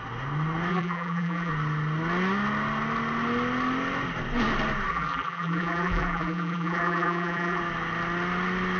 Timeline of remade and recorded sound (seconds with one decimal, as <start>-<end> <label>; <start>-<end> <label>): 0.0-0.7 recorded; 0.7-1.5 remade; 1.5-4.9 recorded; 4.9-7.6 remade; 7.6-8.8 recorded